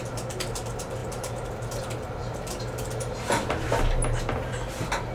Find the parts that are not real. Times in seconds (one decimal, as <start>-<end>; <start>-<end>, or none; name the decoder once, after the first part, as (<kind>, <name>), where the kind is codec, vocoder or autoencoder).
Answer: 1.0-1.8 (vocoder, BigVGAN v2)